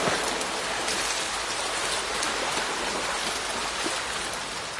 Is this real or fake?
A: real